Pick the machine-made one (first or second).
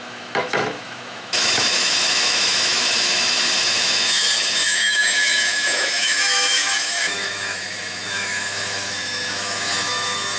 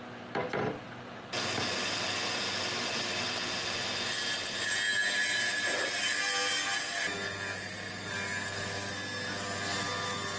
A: first